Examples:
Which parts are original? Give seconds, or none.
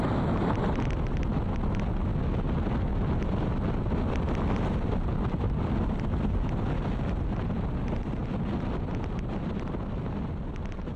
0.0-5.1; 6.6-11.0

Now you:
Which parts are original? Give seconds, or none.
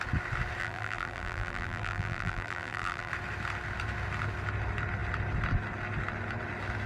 0.0-0.6; 3.1-6.9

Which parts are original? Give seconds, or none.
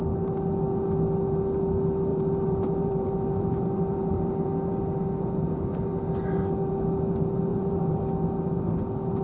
0.0-2.1; 4.3-7.5; 8.0-9.2